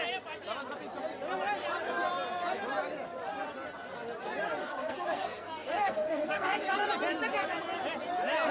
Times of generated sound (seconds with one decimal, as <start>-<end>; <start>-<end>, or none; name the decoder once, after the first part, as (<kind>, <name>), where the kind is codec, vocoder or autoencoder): 4.6-6.7 (codec, SNAC)